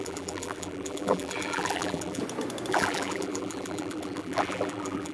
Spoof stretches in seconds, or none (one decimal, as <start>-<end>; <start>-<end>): 0.0-2.2; 2.7-5.1